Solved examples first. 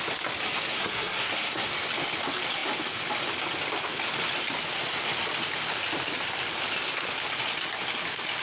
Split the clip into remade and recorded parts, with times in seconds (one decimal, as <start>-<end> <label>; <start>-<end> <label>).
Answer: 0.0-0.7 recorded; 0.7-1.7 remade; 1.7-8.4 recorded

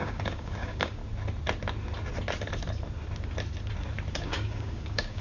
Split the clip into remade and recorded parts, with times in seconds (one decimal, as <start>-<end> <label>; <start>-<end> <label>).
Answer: 0.0-1.0 remade; 1.0-4.1 recorded; 4.1-5.2 remade

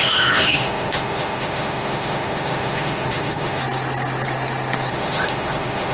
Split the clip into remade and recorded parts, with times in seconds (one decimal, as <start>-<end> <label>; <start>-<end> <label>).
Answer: 0.0-3.6 remade; 3.6-4.9 recorded; 4.9-5.9 remade